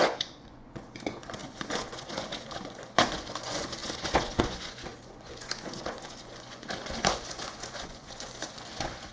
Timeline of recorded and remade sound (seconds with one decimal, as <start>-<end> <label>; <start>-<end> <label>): 0.0-9.1 remade

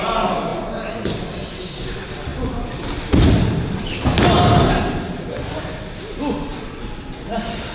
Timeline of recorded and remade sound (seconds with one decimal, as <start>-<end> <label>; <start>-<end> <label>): 0.0-7.7 recorded

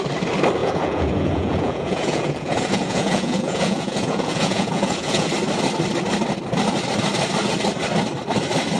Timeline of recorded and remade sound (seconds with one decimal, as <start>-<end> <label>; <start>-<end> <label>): 0.0-0.6 recorded; 0.6-5.3 remade; 5.3-8.8 recorded

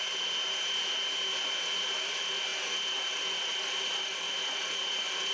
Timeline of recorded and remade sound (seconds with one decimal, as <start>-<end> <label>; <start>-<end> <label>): 0.0-5.3 recorded

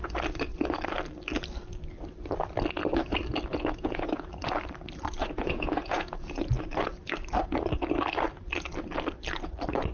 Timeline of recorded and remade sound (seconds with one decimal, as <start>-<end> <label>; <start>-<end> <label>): 0.0-3.5 recorded; 3.5-4.3 remade; 4.3-5.2 recorded; 5.2-6.4 remade; 6.4-9.9 recorded

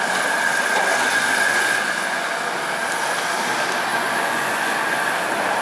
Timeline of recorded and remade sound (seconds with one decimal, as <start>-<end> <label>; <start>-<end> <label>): 0.0-0.9 recorded; 0.9-2.4 remade; 2.4-3.9 recorded; 3.9-5.1 remade; 5.1-5.6 recorded